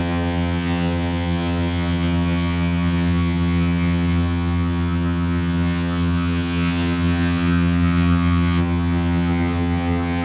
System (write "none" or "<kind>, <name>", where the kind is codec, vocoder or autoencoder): vocoder, HiFi-GAN